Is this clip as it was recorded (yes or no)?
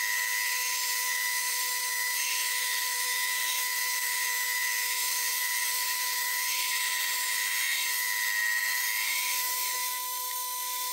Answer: no